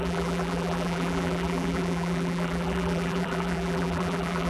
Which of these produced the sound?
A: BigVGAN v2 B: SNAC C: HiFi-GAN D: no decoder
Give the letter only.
A